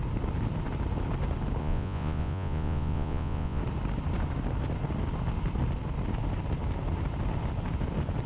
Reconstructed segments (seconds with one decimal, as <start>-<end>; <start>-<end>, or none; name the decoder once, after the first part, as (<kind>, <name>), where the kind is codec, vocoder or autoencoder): 1.6-3.6 (vocoder, Vocos)